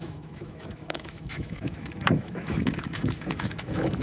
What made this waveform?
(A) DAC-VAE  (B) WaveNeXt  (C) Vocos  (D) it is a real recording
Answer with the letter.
A